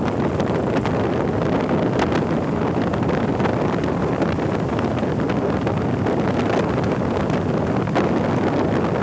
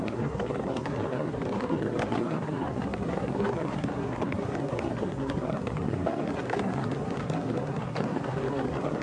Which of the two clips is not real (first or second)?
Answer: second